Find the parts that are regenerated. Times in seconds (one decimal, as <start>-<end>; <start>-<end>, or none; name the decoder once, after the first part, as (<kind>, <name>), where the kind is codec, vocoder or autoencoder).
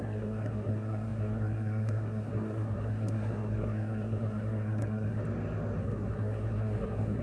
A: 0.0-5.2 (codec, SNAC); 5.8-7.2